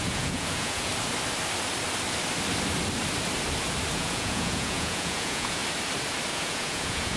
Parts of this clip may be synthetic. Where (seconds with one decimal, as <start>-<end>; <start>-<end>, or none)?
0.0-0.9; 3.9-5.6; 6.3-7.2